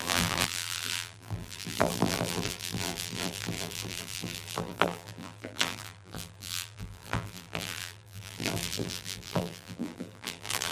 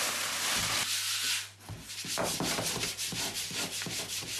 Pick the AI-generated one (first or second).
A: first